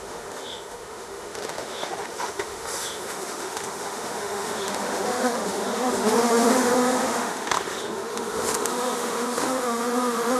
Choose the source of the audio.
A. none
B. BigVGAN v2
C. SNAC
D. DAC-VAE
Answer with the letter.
D